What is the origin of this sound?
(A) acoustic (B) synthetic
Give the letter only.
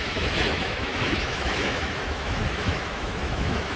B